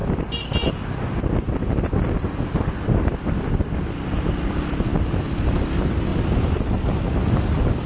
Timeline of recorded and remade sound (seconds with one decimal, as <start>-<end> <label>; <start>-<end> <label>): 0.0-6.1 recorded; 6.1-6.6 remade; 6.6-7.9 recorded